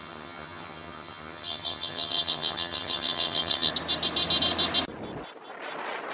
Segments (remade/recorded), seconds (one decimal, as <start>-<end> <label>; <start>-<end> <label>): 0.0-3.7 remade; 3.7-6.1 recorded